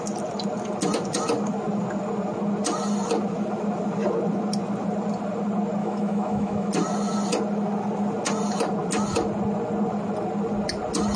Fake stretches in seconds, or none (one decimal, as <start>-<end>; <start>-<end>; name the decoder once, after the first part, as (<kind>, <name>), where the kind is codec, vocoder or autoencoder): 5.8-6.7 (autoencoder, DAC-VAE)